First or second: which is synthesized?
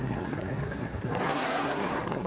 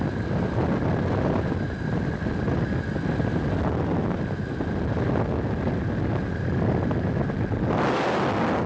first